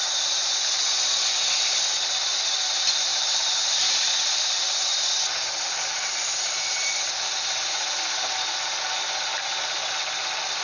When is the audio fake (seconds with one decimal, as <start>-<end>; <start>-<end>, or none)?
3.1-4.8